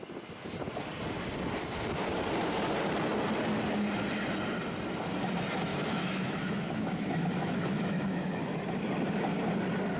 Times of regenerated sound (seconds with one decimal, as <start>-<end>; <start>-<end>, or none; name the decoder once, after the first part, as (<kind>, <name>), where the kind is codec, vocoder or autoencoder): 5.7-8.6 (autoencoder, DAC-VAE)